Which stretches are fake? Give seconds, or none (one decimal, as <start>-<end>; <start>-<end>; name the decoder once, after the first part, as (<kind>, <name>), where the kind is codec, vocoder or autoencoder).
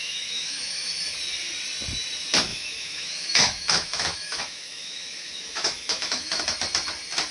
0.0-1.0 (autoencoder, DAC-VAE); 2.5-6.4